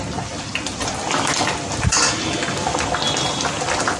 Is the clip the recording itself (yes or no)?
yes